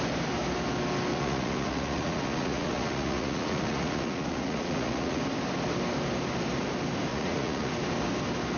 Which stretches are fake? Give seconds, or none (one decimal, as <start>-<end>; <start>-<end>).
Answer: 1.1-5.2; 7.1-7.7